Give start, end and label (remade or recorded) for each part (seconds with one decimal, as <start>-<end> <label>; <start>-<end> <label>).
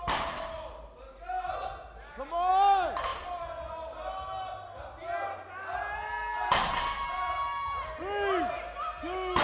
0.0-9.4 recorded